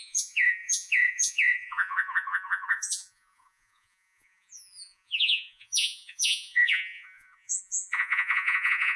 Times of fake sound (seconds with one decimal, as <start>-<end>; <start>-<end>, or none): 0.0-9.0